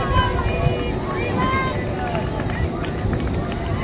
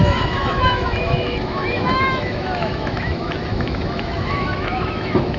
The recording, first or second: first